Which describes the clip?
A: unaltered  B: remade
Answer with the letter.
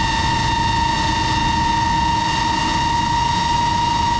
A